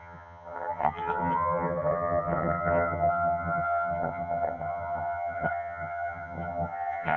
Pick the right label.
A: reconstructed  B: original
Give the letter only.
A